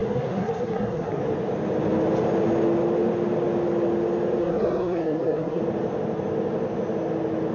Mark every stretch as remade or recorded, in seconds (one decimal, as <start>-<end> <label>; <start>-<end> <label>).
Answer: 0.0-1.2 remade; 1.2-4.4 recorded; 4.4-5.6 remade; 5.6-7.5 recorded